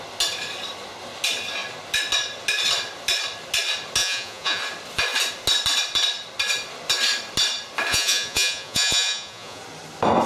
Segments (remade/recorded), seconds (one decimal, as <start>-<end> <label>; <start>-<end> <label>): 0.0-4.0 recorded; 4.0-4.6 remade; 4.6-7.9 recorded; 7.9-9.6 remade; 9.6-10.3 recorded